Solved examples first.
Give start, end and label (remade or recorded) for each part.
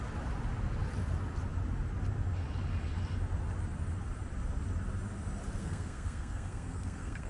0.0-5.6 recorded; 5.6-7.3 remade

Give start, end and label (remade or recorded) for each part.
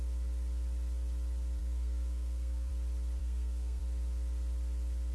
0.0-1.6 recorded; 1.6-2.7 remade; 2.7-3.2 recorded; 3.2-3.8 remade; 3.8-5.1 recorded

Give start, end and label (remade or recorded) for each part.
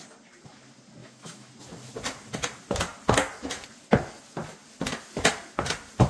0.0-1.0 recorded; 1.0-1.5 remade; 1.5-6.1 recorded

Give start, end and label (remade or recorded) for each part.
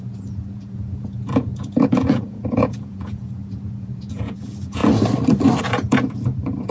0.0-4.8 remade; 4.8-5.6 recorded; 5.6-6.7 remade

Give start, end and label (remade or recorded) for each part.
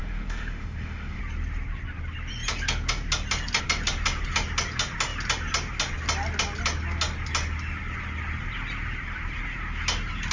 0.0-1.2 remade; 1.2-10.3 recorded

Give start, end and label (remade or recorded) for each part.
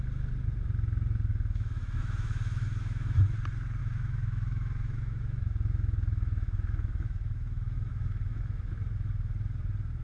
0.0-1.3 recorded; 1.3-3.3 remade; 3.3-3.8 recorded; 3.8-8.7 remade; 8.7-10.0 recorded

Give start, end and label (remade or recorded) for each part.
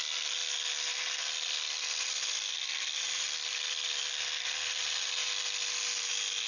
0.0-0.9 recorded; 0.9-4.8 remade; 4.8-6.5 recorded